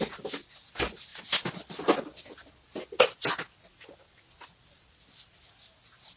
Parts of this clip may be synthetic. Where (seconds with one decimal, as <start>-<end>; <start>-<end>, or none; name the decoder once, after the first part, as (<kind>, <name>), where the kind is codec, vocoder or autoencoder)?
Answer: none